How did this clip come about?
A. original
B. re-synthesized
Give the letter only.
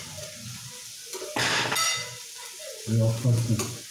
A